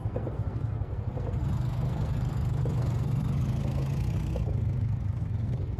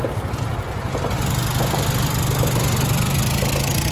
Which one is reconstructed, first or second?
first